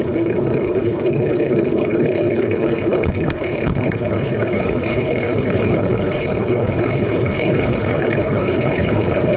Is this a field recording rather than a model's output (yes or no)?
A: no